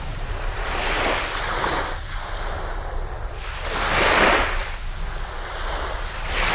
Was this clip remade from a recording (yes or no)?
no